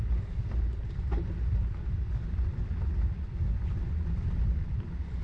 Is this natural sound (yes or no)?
yes